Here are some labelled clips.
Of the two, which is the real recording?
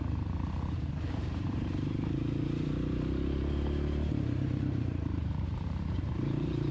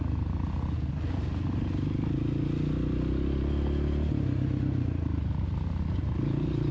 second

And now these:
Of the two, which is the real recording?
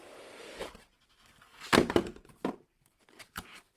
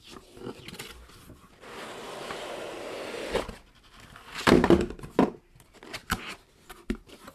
second